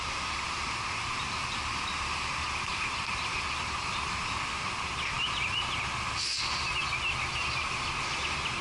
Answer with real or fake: real